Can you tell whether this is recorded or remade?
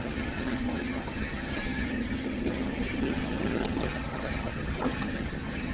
remade